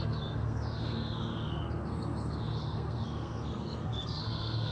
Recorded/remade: remade